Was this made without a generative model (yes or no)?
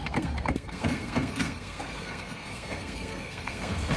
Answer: no